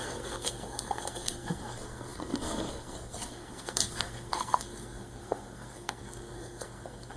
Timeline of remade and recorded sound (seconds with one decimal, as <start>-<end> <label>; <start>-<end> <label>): 0.0-7.2 remade